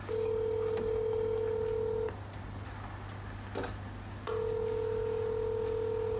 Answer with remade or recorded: recorded